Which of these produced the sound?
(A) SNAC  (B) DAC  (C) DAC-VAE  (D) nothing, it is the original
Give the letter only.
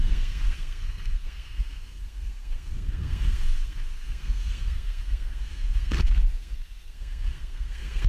A